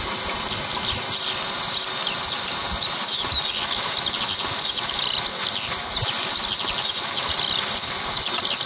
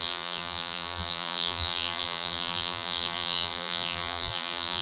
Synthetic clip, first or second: second